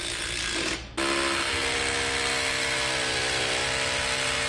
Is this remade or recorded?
recorded